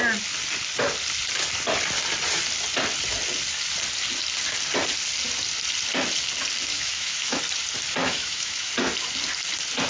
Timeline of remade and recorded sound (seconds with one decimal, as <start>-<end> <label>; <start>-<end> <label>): 0.0-6.7 recorded; 6.7-7.4 remade; 7.4-8.0 recorded; 8.0-8.7 remade; 8.7-9.9 recorded